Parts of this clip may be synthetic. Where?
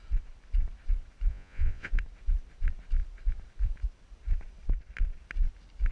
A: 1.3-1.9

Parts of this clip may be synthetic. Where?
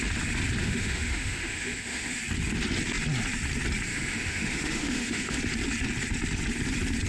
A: 0.6-2.2; 3.9-5.4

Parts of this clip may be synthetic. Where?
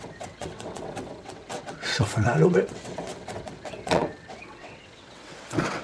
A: 0.0-5.8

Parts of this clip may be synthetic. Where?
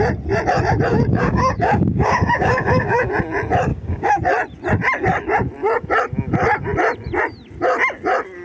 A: 0.9-3.1; 3.7-4.2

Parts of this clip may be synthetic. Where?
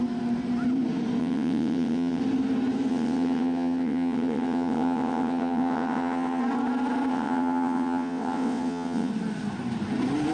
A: 1.2-2.2; 2.9-6.4; 7.1-9.1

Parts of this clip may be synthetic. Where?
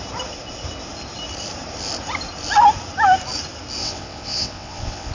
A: 3.8-5.1